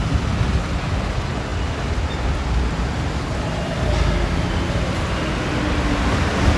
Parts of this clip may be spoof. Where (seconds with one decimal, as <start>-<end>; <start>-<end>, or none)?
none

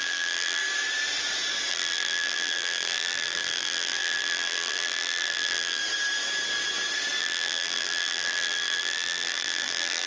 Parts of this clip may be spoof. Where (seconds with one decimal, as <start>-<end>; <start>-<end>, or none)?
0.0-0.6; 1.7-5.8; 7.2-10.1